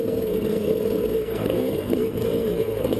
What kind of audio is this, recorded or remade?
remade